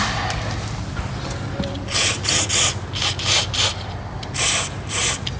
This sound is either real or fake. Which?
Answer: real